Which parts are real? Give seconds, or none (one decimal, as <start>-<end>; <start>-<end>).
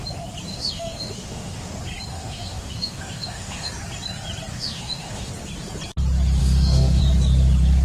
0.0-0.5; 1.7-2.1; 3.7-4.5; 5.3-6.4; 7.0-7.8